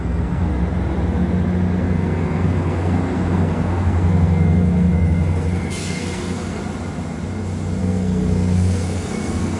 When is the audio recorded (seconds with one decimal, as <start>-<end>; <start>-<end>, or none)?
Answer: 0.5-1.8; 6.6-7.8